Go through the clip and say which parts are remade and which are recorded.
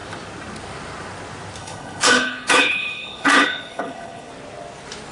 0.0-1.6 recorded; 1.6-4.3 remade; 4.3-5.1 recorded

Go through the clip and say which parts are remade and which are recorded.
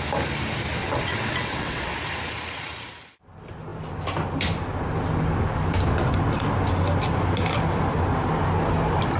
0.0-0.8 recorded; 0.8-1.9 remade; 1.9-9.2 recorded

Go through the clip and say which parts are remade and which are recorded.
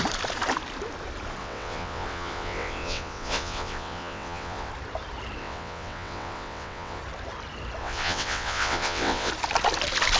0.0-1.4 recorded; 1.4-4.7 remade; 4.7-5.4 recorded; 5.4-7.0 remade; 7.0-7.8 recorded; 7.8-9.3 remade; 9.3-10.2 recorded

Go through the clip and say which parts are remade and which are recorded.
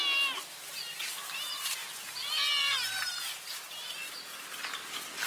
0.0-1.8 recorded; 1.8-2.5 remade; 2.5-5.3 recorded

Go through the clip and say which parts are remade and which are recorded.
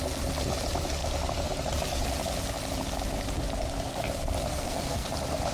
0.0-4.5 recorded; 4.5-5.1 remade; 5.1-5.5 recorded